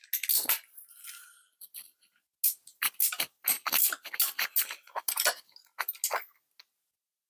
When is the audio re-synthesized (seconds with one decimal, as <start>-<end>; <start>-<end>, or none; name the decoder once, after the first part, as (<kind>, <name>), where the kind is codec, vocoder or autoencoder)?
none